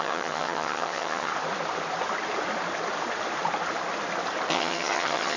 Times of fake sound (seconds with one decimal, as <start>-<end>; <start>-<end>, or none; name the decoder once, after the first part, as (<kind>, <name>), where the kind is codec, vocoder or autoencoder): 0.0-1.3 (vocoder, HiFi-GAN); 4.5-5.4